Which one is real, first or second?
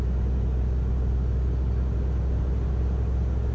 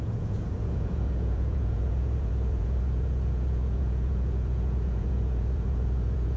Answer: first